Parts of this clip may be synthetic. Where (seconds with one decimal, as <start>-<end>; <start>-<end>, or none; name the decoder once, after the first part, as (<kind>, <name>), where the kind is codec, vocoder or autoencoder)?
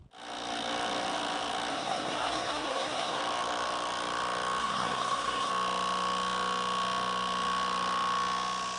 1.7-3.2 (codec, SNAC); 4.6-5.5